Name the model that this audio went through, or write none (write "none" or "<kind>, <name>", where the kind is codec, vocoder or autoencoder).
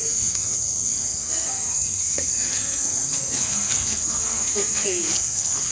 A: codec, SNAC